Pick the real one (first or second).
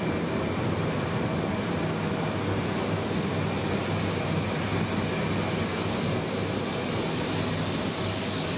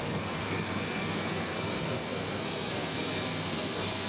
first